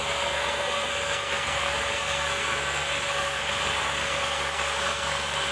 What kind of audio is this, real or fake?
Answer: fake